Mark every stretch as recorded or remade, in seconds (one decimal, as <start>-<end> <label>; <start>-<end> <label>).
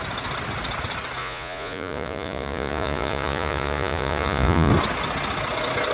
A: 0.0-1.2 recorded; 1.2-4.7 remade; 4.7-5.9 recorded